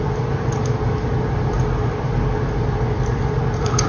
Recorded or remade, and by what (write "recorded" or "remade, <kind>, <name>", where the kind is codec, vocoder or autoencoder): recorded